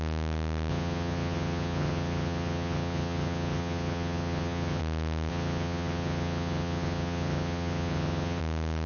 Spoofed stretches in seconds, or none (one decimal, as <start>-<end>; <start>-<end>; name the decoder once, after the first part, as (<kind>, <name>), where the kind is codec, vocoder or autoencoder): 0.7-4.8 (vocoder, HiFi-GAN); 5.3-8.4